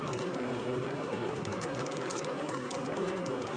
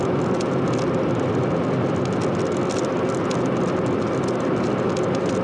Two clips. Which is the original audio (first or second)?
second